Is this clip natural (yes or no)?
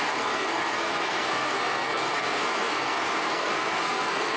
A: no